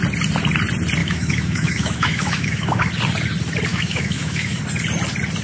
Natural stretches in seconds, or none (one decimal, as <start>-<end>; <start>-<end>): 0.0-1.0; 2.9-3.7; 4.6-5.4